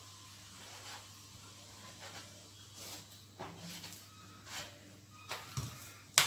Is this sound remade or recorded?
recorded